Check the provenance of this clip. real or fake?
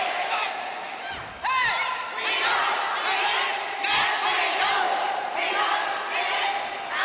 real